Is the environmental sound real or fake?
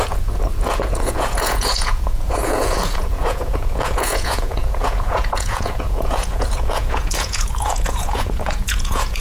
fake